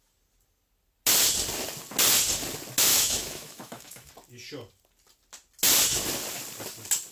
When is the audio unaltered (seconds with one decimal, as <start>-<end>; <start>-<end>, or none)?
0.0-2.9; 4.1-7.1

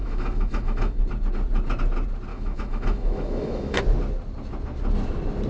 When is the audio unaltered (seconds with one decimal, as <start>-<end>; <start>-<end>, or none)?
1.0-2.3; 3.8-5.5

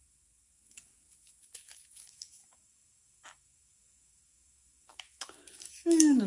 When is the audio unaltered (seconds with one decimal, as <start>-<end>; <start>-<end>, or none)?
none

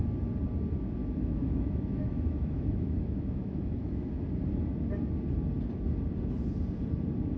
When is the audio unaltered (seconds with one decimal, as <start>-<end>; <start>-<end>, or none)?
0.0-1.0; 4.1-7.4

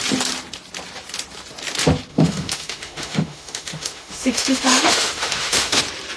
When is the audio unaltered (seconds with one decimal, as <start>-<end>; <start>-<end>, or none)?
0.0-2.1; 5.8-6.2